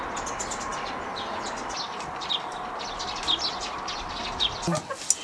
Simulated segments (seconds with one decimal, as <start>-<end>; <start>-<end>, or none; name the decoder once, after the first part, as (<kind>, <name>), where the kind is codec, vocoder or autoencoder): none